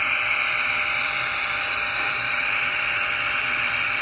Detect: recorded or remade remade